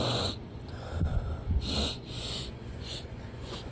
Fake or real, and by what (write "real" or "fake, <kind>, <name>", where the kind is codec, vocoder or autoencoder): fake, vocoder, Vocos